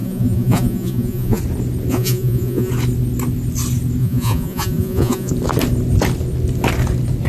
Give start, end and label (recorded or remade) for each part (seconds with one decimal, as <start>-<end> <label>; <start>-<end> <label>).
0.0-1.4 remade; 1.4-1.9 recorded; 1.9-2.7 remade; 2.7-4.0 recorded; 4.0-5.3 remade; 5.3-7.3 recorded